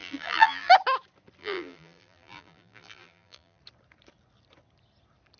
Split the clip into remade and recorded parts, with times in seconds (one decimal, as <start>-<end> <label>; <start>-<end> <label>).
0.0-0.7 remade; 0.7-1.4 recorded; 1.4-3.6 remade; 3.6-5.4 recorded